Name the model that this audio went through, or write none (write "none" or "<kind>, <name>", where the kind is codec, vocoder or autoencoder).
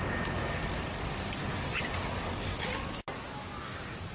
none